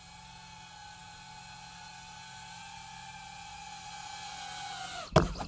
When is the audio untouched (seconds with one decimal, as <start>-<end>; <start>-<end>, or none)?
0.0-5.5

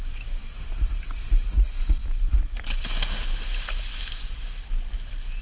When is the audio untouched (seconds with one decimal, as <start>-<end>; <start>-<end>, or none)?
0.0-5.4

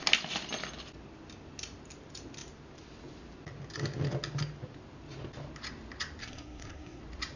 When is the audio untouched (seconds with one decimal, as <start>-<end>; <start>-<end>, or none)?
0.0-6.2; 7.0-7.4

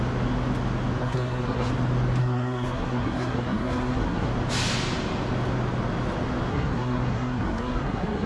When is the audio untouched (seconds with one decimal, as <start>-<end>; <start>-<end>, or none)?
0.0-1.0; 1.7-2.2; 4.3-6.5

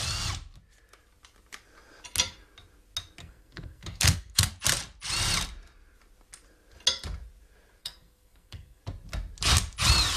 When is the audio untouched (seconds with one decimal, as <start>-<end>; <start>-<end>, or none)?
0.0-3.2; 4.5-7.8; 8.8-10.2

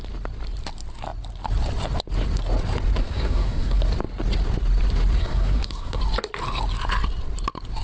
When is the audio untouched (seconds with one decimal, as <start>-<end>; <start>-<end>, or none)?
0.0-3.0; 3.8-5.2; 6.0-7.8

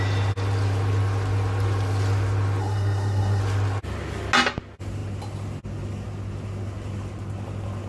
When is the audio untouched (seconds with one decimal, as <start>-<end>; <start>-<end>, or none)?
0.0-2.6; 3.4-7.9